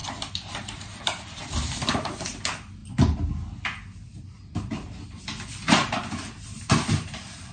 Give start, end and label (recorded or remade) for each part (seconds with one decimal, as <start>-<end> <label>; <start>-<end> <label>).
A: 0.0-2.8 remade; 2.8-5.7 recorded; 5.7-7.5 remade